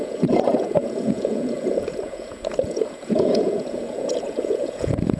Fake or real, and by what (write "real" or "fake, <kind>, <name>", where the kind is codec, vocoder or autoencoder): fake, vocoder, Vocos